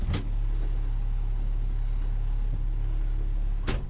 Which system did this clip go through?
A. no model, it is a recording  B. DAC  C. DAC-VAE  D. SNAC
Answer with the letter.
A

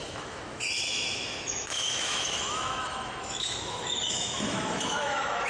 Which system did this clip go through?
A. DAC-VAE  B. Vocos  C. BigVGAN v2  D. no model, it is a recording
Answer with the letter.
A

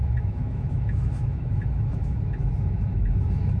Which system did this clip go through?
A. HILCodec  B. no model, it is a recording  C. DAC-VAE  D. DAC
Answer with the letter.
C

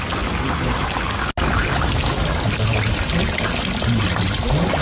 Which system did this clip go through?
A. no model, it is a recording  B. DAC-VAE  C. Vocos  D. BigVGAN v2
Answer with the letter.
A